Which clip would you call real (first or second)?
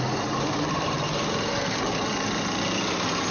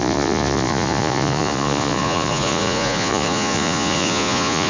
first